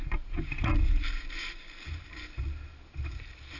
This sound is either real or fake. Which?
real